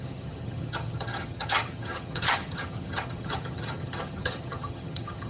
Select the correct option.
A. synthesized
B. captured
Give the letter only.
A